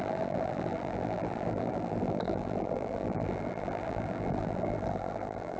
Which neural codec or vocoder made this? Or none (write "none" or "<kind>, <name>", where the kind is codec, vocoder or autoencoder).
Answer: vocoder, BigVGAN v2